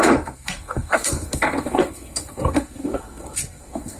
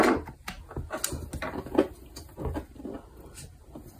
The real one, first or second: second